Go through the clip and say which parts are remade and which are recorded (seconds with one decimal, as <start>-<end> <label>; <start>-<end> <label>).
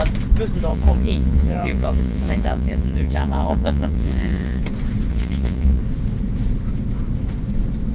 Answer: 0.0-0.7 recorded; 0.7-4.6 remade; 4.6-5.1 recorded; 5.1-5.8 remade; 5.8-7.9 recorded